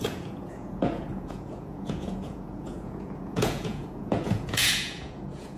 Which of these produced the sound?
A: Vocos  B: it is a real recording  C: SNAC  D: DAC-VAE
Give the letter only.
A